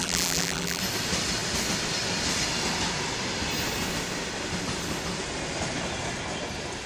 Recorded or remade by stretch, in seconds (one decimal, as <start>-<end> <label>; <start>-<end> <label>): 0.0-0.8 remade; 0.8-6.9 recorded